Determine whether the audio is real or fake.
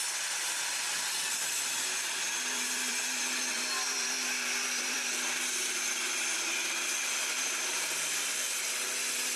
fake